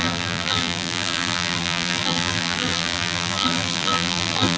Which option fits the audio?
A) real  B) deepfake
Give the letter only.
B